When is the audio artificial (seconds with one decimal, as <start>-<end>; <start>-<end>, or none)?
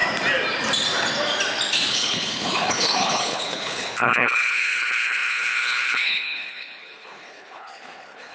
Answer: 1.9-8.3